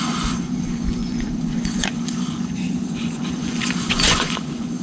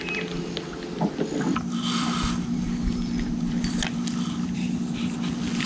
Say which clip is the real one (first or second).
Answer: second